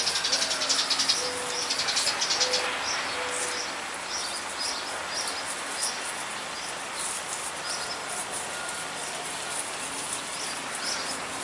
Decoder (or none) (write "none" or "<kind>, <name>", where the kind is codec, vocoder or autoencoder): none